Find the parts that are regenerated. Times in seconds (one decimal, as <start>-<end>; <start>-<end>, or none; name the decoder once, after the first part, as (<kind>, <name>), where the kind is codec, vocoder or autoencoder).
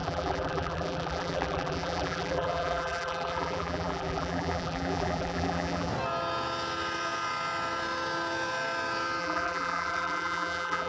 0.0-5.9 (vocoder, BigVGAN v2); 9.2-10.9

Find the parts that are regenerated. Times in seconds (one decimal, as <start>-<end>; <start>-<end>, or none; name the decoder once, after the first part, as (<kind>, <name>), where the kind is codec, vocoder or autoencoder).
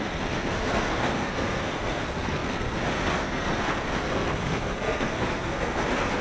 0.0-6.2 (codec, SNAC)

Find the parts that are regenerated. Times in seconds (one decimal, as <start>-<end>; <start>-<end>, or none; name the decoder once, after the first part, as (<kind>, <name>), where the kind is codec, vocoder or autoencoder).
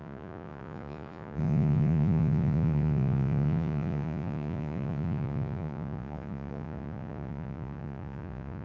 0.0-8.6 (vocoder, Vocos)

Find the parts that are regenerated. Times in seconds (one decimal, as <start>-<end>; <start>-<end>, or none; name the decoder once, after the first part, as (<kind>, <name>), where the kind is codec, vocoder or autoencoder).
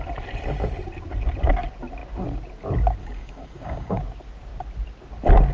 3.0-4.0 (codec, DAC)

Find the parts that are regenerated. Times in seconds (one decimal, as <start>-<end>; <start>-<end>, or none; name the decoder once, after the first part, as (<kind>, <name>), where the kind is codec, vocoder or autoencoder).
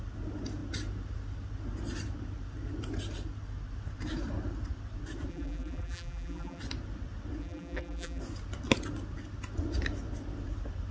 5.3-6.6 (vocoder, BigVGAN v2); 7.4-8.2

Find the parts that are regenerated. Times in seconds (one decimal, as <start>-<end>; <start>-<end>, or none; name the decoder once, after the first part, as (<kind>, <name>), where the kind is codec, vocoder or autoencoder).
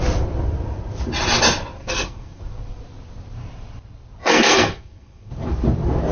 1.8-2.4 (codec, SNAC); 4.2-5.3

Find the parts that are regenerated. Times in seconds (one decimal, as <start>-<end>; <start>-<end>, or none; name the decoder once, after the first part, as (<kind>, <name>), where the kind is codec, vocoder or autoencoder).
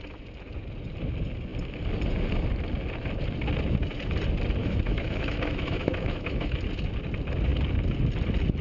4.6-6.6 (autoencoder, DAC-VAE)